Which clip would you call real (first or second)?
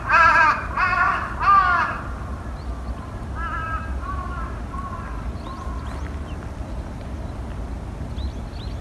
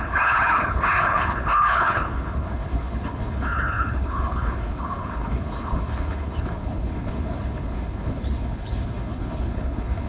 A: first